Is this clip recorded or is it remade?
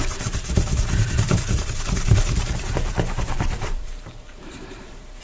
remade